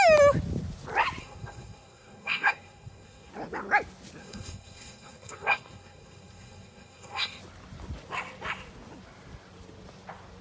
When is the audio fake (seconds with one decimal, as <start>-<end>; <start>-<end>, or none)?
1.2-3.3; 4.2-7.4